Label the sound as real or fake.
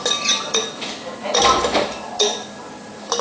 real